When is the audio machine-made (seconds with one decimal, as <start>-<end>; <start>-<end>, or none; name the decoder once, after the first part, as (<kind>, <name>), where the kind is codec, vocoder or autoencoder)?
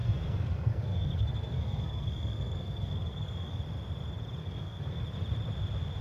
0.0-3.6 (codec, SNAC); 4.4-5.0